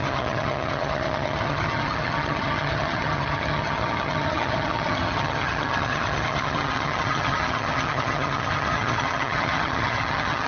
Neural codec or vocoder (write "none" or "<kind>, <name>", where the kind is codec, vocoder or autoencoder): vocoder, HiFi-GAN